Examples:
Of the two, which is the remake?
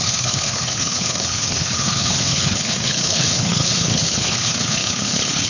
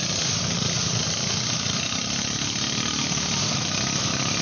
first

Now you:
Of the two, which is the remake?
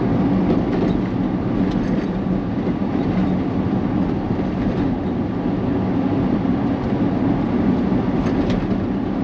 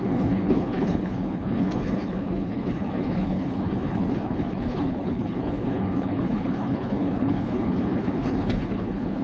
second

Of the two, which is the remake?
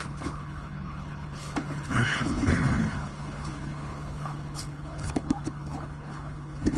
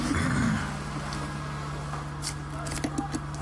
first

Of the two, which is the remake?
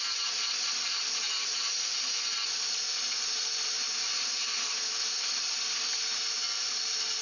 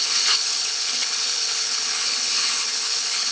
second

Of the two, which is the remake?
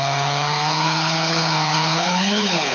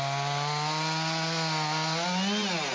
first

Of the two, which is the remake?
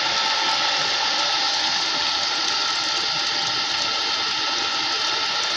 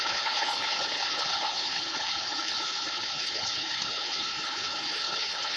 second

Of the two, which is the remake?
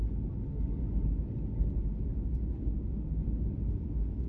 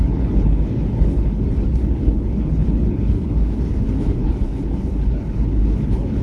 second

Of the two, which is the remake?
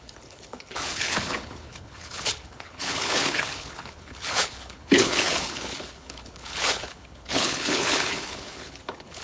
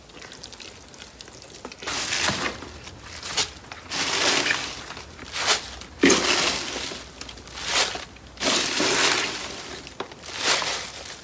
first